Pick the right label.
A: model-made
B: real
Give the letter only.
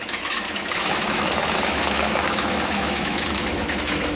A